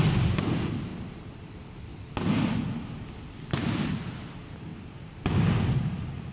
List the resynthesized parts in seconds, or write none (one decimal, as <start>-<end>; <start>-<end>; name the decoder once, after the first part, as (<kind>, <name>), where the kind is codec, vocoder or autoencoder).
none